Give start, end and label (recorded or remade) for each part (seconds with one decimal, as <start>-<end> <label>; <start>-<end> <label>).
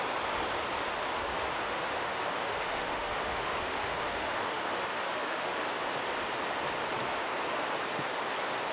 0.0-1.6 recorded; 1.6-5.7 remade; 5.7-8.7 recorded